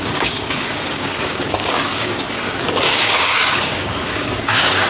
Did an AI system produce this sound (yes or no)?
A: yes